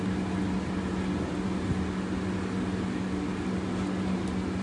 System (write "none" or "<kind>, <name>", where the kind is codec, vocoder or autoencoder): none